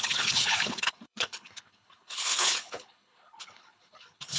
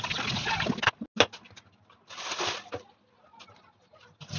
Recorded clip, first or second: second